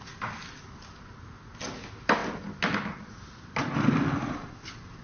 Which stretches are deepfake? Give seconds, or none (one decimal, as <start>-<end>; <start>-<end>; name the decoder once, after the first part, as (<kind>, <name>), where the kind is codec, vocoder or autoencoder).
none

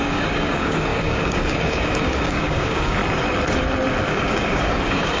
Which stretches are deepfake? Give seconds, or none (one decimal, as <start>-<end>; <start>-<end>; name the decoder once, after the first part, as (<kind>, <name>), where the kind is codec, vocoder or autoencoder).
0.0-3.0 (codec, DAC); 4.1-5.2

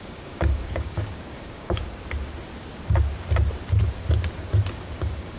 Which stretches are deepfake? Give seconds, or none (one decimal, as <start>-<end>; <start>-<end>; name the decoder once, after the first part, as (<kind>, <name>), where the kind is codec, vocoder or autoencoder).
0.0-1.8 (codec, DAC); 4.7-5.4

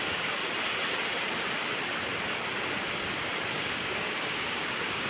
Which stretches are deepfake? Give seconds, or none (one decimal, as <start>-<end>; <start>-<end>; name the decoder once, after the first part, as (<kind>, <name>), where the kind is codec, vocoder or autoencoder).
0.0-0.4 (codec, DAC); 3.5-5.1

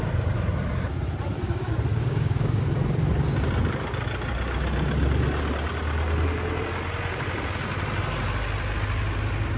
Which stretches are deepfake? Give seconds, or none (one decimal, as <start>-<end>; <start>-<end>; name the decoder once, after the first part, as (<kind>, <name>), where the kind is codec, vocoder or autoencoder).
1.9-2.6 (codec, DAC)

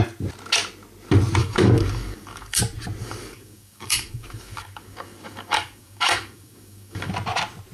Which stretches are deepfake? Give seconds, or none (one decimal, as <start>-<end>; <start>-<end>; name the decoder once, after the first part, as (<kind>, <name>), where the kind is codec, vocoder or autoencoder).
1.4-2.6 (codec, DAC); 3.0-7.1